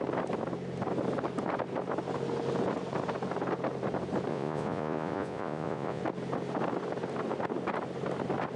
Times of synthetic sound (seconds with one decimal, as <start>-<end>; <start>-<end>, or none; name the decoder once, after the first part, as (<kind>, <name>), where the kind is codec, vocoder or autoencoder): 4.3-6.0 (vocoder, Vocos)